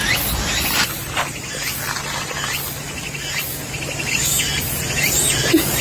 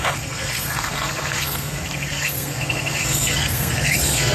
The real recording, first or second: first